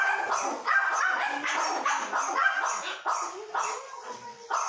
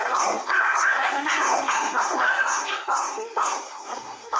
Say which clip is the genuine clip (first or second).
first